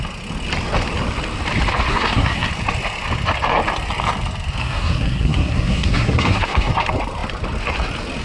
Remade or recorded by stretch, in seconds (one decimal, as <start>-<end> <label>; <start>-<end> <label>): 0.0-1.9 recorded; 1.9-2.5 remade; 2.5-4.6 recorded; 4.6-6.7 remade; 6.7-8.2 recorded